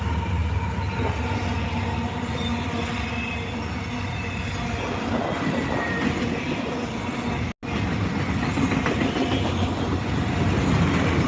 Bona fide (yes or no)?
yes